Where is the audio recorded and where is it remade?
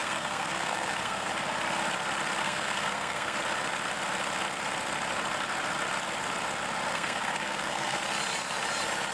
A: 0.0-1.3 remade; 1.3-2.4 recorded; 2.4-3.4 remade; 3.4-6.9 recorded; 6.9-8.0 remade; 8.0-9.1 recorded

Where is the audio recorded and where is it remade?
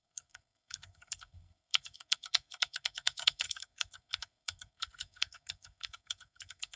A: 0.0-6.8 remade